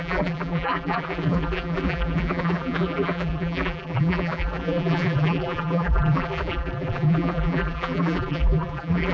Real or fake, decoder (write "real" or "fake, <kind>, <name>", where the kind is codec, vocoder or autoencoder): fake, vocoder, BigVGAN v2